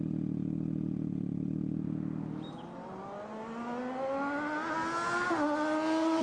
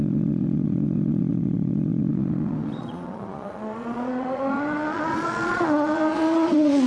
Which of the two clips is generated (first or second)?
second